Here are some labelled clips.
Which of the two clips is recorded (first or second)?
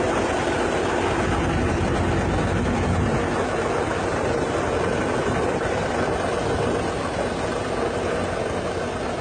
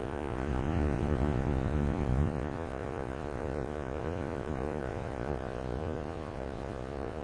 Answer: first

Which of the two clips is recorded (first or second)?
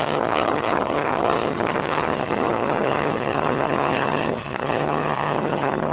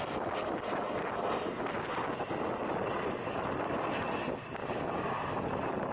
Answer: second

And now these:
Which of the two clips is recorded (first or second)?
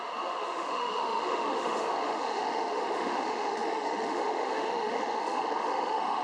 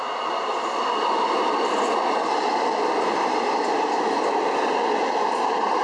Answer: second